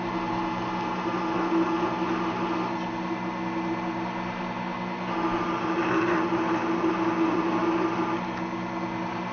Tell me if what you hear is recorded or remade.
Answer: recorded